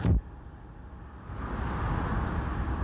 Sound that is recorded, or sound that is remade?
recorded